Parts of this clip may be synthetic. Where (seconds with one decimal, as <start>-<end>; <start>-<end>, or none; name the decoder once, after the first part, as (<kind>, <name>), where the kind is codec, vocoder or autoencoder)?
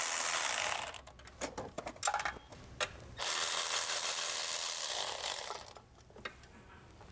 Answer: none